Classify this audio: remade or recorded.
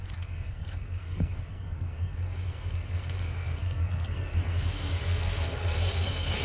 remade